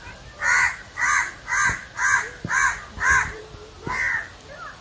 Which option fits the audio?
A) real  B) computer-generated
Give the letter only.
A